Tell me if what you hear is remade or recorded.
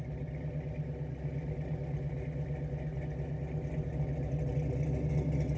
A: recorded